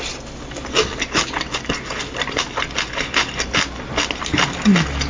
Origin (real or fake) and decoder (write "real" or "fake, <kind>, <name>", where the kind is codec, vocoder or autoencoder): real